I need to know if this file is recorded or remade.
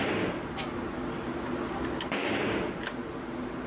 recorded